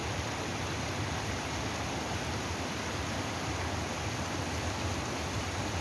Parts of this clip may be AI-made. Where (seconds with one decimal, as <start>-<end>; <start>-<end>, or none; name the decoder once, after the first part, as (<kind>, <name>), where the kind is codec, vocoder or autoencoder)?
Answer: 0.0-3.5 (vocoder, BigVGAN v2)